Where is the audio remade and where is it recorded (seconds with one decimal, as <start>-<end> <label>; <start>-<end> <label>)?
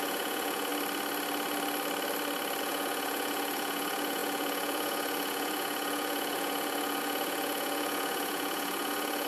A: 0.0-0.7 remade; 0.7-2.6 recorded; 2.6-9.3 remade